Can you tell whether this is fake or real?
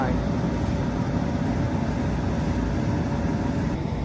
real